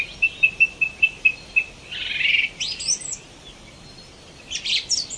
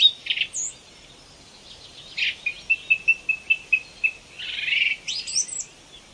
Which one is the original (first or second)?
second